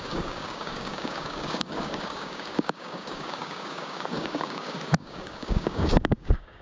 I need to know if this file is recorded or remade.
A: remade